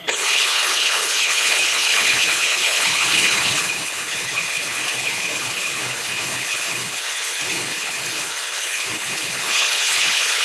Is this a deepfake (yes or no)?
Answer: yes